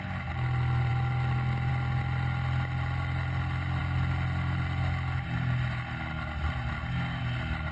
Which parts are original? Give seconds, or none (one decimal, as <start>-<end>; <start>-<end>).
0.0-7.7